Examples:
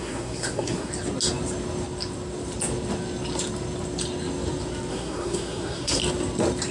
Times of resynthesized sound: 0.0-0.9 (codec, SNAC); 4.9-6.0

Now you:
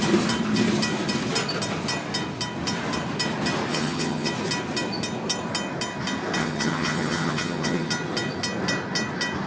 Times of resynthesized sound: 3.7-4.3 (vocoder, HiFi-GAN); 6.4-7.9